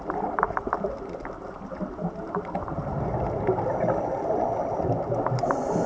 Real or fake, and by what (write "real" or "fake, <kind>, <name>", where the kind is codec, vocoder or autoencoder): real